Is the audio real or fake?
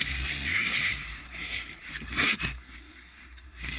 fake